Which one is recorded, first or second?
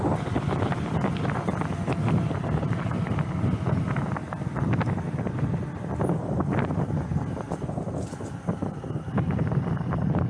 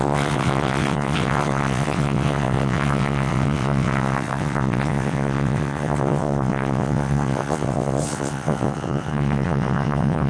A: first